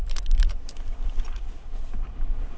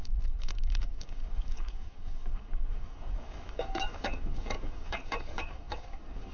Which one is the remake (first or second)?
second